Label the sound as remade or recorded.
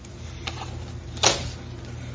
recorded